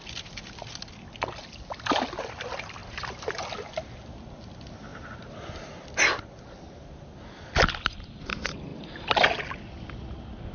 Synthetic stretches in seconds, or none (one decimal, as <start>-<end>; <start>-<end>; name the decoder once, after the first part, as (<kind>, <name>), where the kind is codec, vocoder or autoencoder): 2.8-3.4 (vocoder, BigVGAN v2)